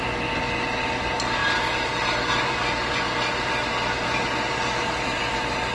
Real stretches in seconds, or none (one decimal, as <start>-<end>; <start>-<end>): 0.0-5.7